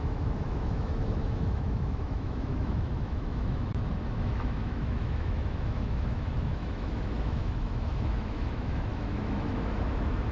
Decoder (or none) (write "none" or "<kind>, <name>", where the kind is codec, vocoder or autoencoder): autoencoder, DAC-VAE